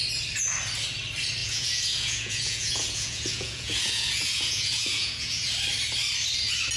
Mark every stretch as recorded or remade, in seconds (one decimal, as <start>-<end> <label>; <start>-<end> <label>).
0.0-1.4 recorded; 1.4-5.5 remade; 5.5-6.8 recorded